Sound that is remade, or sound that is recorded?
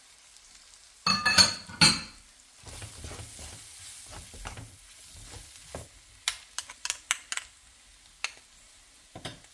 recorded